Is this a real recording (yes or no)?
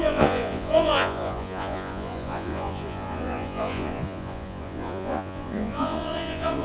no